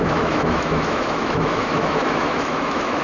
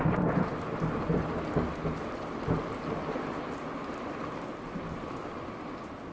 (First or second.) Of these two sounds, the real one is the second